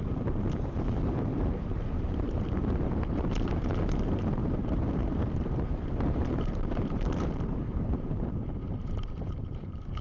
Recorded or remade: remade